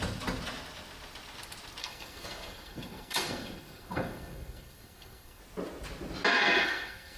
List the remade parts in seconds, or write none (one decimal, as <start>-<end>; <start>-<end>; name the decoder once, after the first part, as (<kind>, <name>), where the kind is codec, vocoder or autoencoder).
1.8-5.4 (codec, SNAC); 6.3-7.2